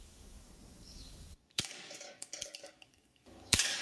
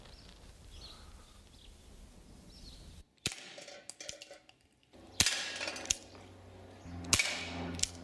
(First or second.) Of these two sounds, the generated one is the first